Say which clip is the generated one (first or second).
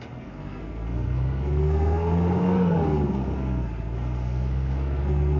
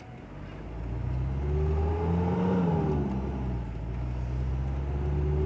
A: first